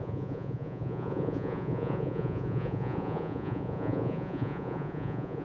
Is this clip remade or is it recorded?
remade